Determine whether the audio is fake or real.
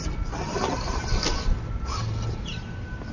real